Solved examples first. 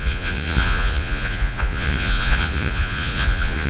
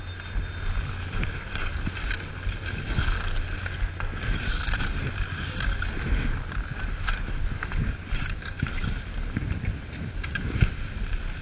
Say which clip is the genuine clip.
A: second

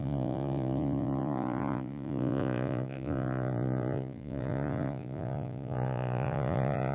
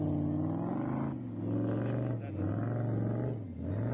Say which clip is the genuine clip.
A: second